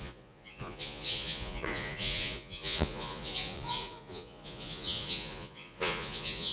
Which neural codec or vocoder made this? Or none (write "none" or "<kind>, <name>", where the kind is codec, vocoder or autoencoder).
vocoder, Vocos